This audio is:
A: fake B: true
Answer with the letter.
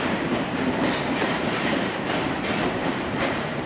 A